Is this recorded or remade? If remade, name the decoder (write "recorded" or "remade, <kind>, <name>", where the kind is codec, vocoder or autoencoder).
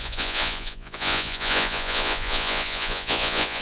remade, vocoder, Vocos